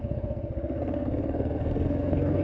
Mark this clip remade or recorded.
remade